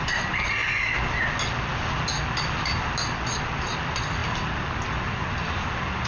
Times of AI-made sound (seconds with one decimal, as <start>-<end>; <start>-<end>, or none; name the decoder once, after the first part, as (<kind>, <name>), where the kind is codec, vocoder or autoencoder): 0.0-0.6 (vocoder, BigVGAN v2); 2.6-4.2; 5.1-6.1